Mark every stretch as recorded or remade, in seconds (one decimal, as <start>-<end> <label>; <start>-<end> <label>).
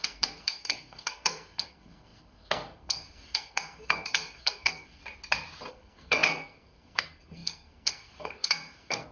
0.0-5.0 remade; 5.0-5.7 recorded; 5.7-9.1 remade